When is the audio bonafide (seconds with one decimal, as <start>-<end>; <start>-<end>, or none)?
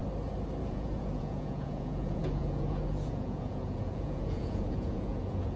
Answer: 0.0-0.6